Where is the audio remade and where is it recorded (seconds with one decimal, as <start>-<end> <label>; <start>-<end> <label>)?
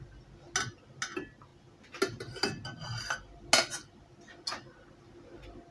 0.0-5.7 recorded